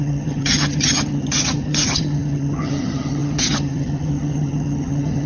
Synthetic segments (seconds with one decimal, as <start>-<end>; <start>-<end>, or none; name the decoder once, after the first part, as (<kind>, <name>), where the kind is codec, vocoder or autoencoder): 0.0-5.3 (vocoder, HiFi-GAN)